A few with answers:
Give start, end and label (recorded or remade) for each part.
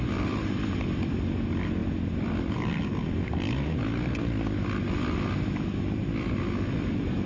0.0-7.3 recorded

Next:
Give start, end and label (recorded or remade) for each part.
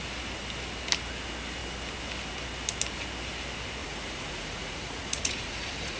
0.0-3.8 recorded; 3.8-6.0 remade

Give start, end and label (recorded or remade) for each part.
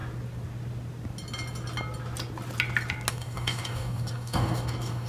0.0-3.1 recorded; 3.1-5.1 remade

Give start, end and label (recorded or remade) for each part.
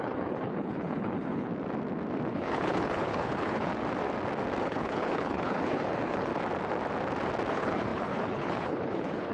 0.0-1.5 remade; 1.5-2.3 recorded; 2.3-3.7 remade; 3.7-4.6 recorded; 4.6-6.3 remade; 6.3-7.5 recorded; 7.5-9.3 remade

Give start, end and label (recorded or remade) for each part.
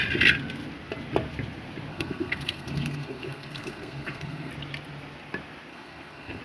0.0-1.9 recorded; 1.9-4.5 remade; 4.5-5.7 recorded; 5.7-6.4 remade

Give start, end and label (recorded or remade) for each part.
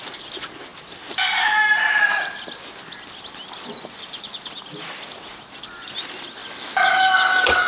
0.0-7.7 recorded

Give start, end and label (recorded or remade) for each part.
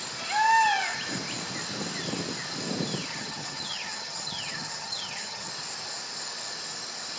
0.0-3.1 recorded; 3.1-5.5 remade; 5.5-7.2 recorded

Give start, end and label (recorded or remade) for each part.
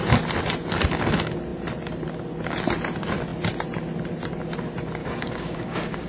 0.0-5.0 recorded; 5.0-6.1 remade